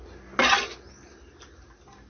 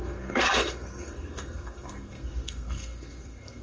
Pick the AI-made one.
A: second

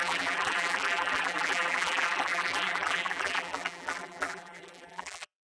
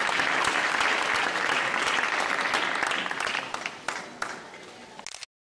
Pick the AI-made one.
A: first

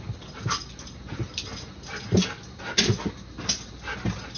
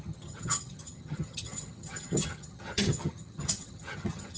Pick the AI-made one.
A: second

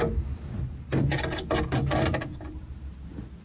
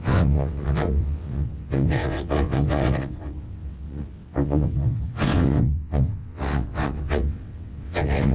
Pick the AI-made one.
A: second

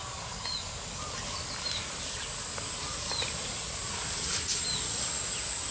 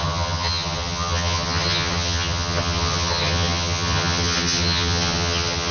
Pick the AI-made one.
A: second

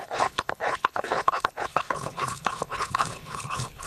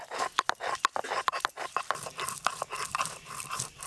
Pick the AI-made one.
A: first